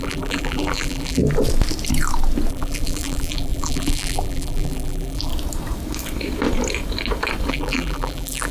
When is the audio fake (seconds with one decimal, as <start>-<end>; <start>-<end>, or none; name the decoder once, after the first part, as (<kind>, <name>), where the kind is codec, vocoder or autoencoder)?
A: 0.0-1.2 (vocoder, BigVGAN v2); 2.5-5.3; 7.5-8.5